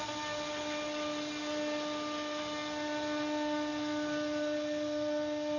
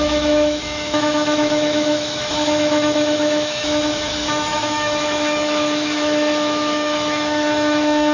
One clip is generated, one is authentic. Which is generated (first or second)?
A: second